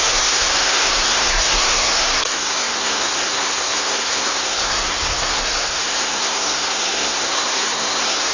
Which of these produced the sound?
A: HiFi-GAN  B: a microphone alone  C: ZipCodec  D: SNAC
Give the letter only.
D